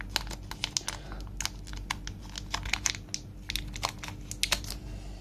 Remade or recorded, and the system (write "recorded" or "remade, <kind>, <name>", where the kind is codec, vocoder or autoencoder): recorded